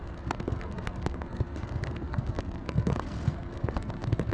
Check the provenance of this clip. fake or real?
fake